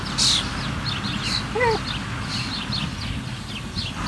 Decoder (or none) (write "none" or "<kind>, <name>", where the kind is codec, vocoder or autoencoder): none